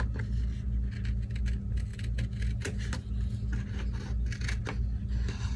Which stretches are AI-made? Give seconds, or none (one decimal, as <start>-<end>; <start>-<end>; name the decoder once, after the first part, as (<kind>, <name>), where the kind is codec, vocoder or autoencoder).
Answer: none